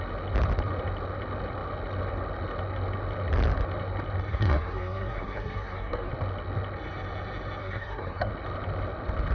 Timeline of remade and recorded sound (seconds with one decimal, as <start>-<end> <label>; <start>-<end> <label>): 0.0-4.3 recorded; 4.3-6.1 remade; 6.1-7.6 recorded; 7.6-8.3 remade; 8.3-9.3 recorded